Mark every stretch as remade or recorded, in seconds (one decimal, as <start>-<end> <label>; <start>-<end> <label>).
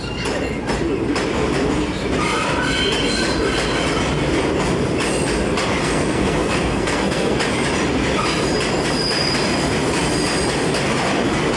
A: 0.0-5.8 recorded; 5.8-7.4 remade; 7.4-11.6 recorded